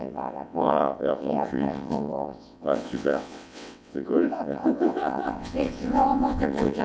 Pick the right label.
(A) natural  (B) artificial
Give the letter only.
B